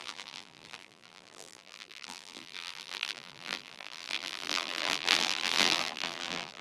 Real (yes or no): no